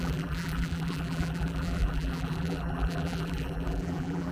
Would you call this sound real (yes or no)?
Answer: no